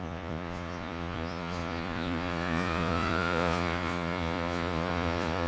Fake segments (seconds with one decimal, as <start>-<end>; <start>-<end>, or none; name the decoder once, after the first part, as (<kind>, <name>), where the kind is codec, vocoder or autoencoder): 0.0-5.5 (vocoder, Vocos)